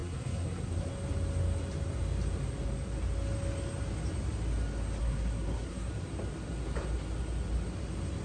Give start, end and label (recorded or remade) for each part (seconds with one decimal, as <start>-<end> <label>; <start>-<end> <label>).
0.0-0.9 remade; 0.9-5.0 recorded; 5.0-5.9 remade; 5.9-8.2 recorded

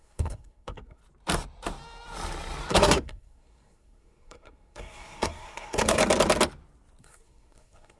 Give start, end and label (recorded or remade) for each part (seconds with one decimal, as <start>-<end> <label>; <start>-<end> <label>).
0.0-1.0 remade; 1.0-2.7 recorded; 2.7-6.0 remade; 6.0-7.0 recorded; 7.0-8.0 remade

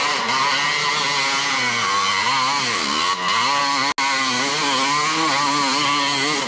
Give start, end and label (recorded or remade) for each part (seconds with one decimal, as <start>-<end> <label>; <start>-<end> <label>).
0.0-6.5 recorded

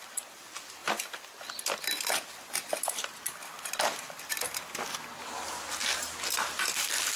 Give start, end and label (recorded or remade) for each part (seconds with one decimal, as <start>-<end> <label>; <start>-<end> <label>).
0.0-7.2 recorded

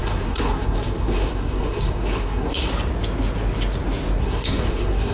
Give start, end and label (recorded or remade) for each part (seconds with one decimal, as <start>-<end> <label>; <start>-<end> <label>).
0.0-2.7 remade; 2.7-4.2 recorded; 4.2-5.1 remade

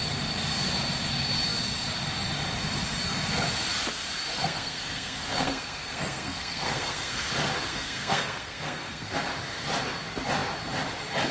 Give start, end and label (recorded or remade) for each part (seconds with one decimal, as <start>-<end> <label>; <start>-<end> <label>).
0.0-4.3 recorded; 4.3-7.3 remade; 7.3-7.7 recorded; 7.7-9.2 remade; 9.2-11.3 recorded

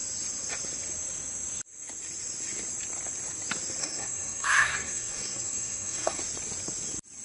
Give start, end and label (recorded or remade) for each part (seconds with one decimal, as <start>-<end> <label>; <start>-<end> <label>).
0.0-3.8 recorded; 3.8-6.2 remade; 6.2-7.2 recorded